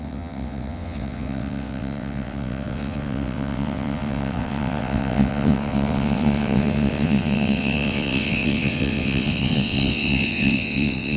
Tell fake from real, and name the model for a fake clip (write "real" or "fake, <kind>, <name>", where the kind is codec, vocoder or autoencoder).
fake, vocoder, WaveNeXt